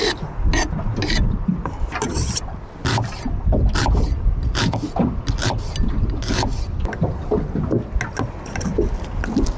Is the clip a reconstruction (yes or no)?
no